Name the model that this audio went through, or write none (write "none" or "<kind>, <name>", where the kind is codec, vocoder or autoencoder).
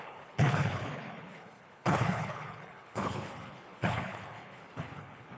codec, HILCodec